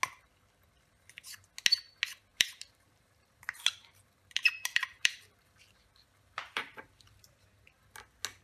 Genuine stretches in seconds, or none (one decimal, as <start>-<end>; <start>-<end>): 0.0-2.3; 6.9-8.4